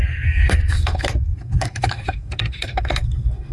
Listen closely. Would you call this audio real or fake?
fake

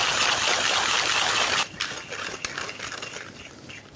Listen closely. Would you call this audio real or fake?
real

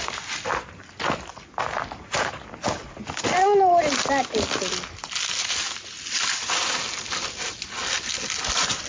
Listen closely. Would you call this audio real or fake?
real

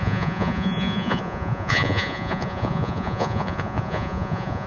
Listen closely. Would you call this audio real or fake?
fake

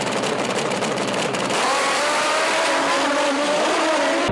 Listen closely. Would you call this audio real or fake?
fake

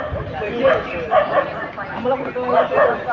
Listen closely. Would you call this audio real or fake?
real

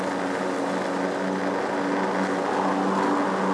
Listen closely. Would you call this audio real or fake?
real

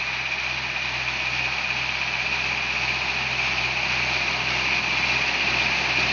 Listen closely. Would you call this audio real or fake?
real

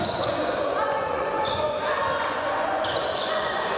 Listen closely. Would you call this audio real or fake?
fake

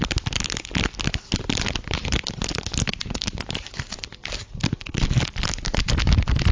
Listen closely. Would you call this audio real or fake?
real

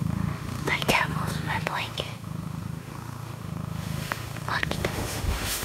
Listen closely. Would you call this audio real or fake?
fake